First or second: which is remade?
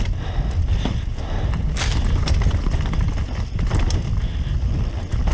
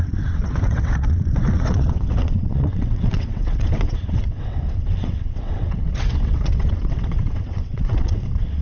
second